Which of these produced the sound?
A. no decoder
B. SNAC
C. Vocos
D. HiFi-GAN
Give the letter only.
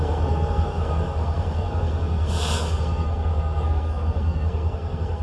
B